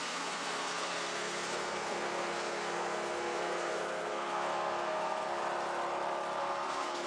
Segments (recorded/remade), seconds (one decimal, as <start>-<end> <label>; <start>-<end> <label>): 0.0-5.4 remade; 5.4-6.4 recorded; 6.4-7.1 remade